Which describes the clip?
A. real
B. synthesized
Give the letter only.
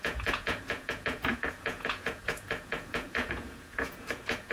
B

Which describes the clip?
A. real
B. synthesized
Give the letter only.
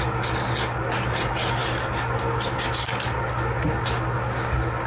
A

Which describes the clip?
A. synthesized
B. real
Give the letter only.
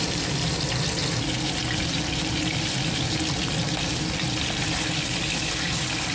B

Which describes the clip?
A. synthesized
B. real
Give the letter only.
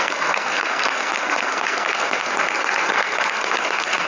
A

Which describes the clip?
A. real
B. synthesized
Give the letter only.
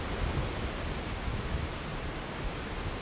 A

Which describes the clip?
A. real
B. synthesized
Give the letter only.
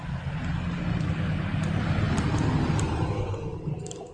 A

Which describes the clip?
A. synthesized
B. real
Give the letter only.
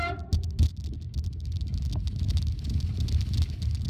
B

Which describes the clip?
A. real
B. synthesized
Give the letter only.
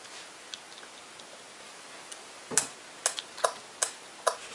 A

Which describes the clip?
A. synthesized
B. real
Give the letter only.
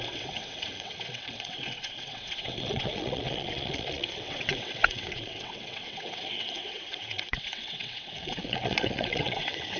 A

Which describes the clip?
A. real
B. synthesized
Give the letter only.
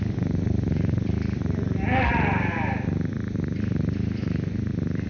A